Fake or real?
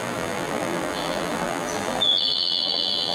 fake